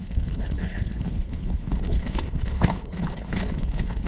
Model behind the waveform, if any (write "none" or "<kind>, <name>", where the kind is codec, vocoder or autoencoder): codec, HILCodec